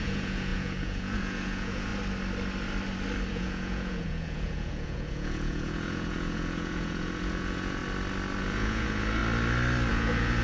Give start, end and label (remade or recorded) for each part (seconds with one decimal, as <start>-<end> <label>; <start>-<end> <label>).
0.0-1.9 remade; 1.9-3.3 recorded; 3.3-7.8 remade; 7.8-8.4 recorded; 8.4-9.2 remade; 9.2-9.9 recorded; 9.9-10.4 remade